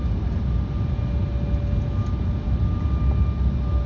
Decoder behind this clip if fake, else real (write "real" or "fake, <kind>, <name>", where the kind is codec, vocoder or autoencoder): real